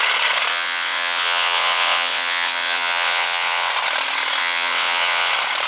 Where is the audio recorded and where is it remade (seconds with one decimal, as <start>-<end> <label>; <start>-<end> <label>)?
0.0-0.5 recorded; 0.5-3.7 remade; 3.7-4.4 recorded; 4.4-5.3 remade; 5.3-5.7 recorded